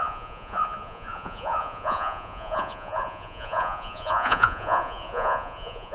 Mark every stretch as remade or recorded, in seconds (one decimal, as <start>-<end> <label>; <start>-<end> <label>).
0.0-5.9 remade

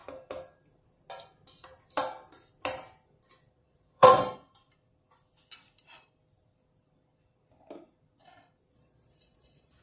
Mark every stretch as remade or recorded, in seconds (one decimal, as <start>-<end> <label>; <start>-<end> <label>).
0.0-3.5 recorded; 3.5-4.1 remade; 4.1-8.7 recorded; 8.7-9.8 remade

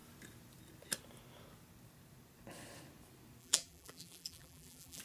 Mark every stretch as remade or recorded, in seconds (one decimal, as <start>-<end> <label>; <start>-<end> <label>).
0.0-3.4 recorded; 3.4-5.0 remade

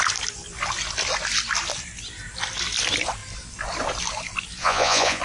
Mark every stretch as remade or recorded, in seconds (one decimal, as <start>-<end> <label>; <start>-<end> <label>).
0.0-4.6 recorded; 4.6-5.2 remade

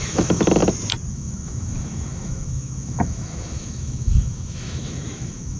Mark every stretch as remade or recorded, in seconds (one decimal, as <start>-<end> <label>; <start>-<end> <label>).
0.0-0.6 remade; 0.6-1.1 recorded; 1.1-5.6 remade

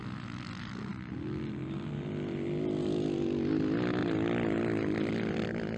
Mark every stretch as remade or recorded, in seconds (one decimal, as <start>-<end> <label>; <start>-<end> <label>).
0.0-4.0 recorded; 4.0-4.6 remade; 4.6-5.8 recorded